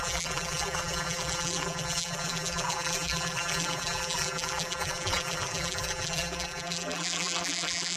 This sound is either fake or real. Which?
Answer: fake